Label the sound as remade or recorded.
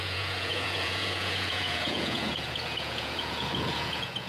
remade